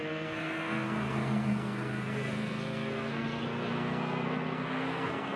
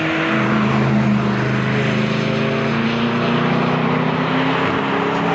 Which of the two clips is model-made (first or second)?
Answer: first